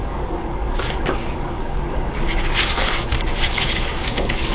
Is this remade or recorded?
remade